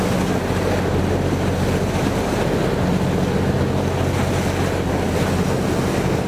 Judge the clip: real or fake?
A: real